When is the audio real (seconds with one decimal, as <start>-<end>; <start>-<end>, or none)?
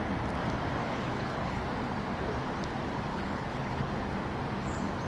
0.0-0.8; 1.6-3.1; 3.9-5.1